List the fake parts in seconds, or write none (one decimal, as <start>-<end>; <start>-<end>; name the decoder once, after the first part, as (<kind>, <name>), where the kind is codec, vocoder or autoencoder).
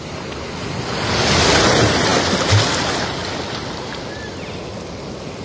none